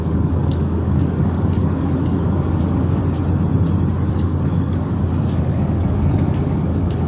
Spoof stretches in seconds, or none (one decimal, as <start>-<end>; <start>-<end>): 0.0-3.0; 4.1-7.1